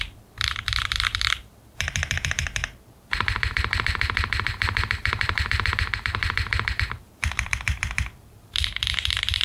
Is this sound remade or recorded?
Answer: remade